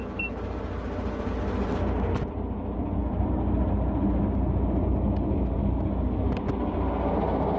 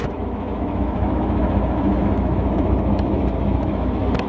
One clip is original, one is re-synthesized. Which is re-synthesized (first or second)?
second